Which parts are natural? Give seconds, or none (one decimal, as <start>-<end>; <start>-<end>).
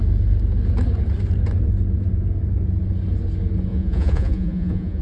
0.0-3.7